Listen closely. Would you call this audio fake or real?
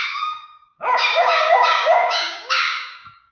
fake